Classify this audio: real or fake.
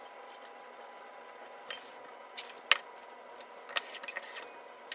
real